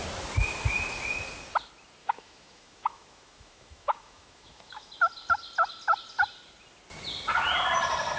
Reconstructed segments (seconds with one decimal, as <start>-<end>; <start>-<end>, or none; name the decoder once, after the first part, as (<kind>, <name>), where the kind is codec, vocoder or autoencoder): 2.0-4.9 (autoencoder, DAC-VAE)